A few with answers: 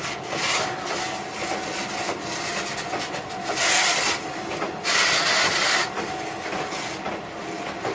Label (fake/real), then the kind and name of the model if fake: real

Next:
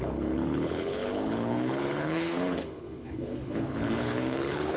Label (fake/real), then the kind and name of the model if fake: fake, codec, HILCodec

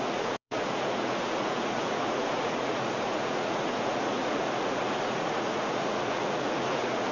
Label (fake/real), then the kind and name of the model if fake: fake, vocoder, Vocos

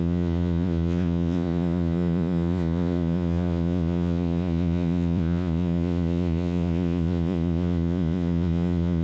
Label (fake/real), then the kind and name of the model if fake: fake, vocoder, Vocos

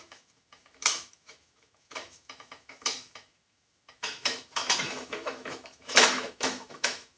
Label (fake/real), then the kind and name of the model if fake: fake, autoencoder, DAC-VAE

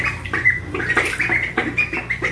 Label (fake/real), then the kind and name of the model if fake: real